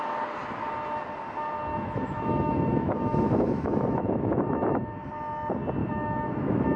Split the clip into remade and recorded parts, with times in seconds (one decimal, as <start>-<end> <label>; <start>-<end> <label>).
0.0-1.7 recorded; 1.7-5.1 remade; 5.1-5.8 recorded; 5.8-6.8 remade